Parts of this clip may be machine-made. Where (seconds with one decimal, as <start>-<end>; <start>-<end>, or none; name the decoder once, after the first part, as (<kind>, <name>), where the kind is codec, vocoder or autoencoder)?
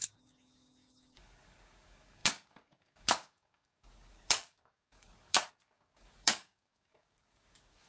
0.0-7.9 (codec, DAC)